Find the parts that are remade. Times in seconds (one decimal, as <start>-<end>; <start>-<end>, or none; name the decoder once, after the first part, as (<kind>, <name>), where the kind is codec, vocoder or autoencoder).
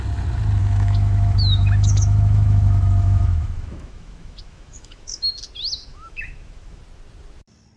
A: 0.6-5.3 (autoencoder, DAC-VAE); 5.9-6.8